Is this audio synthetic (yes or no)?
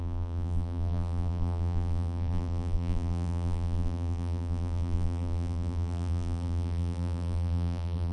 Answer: yes